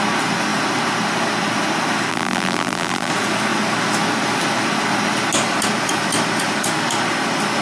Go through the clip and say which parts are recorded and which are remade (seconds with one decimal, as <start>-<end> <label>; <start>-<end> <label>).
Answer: 0.0-2.1 recorded; 2.1-3.1 remade; 3.1-7.6 recorded